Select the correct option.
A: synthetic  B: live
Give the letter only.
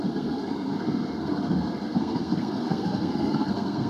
A